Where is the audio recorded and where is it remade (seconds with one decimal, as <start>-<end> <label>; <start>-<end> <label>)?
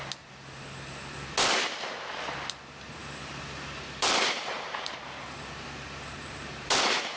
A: 0.0-3.0 recorded; 3.0-6.7 remade; 6.7-7.2 recorded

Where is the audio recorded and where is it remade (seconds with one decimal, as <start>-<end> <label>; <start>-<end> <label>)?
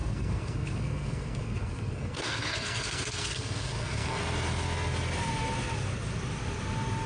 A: 0.0-4.2 remade; 4.2-7.1 recorded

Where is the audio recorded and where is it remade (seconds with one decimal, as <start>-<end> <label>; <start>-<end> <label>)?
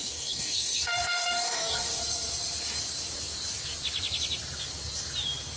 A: 0.0-2.0 remade; 2.0-5.6 recorded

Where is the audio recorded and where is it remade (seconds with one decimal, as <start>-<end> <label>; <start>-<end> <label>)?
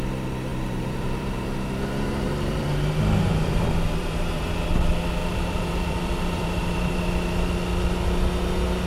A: 0.0-0.5 recorded; 0.5-4.5 remade; 4.5-5.2 recorded; 5.2-7.0 remade; 7.0-8.9 recorded